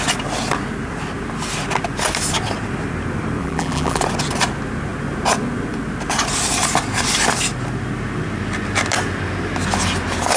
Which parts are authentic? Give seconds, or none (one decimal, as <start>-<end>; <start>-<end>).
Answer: 0.0-3.4; 4.0-10.4